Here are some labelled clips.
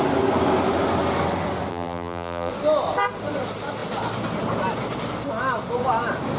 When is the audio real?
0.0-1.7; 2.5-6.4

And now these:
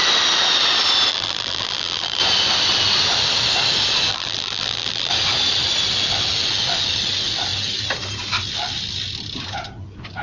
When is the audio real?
0.0-1.1; 2.2-4.1; 5.1-10.2

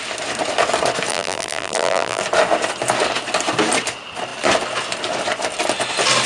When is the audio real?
0.0-1.1; 2.2-6.3

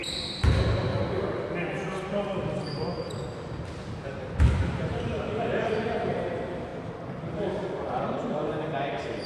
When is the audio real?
0.9-4.4; 6.7-9.3